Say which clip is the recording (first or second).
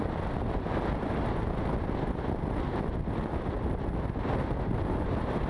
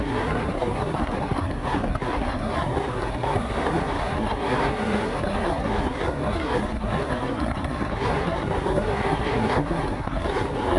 first